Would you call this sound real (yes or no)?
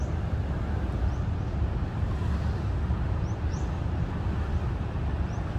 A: yes